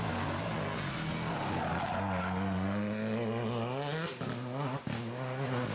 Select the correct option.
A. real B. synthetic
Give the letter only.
A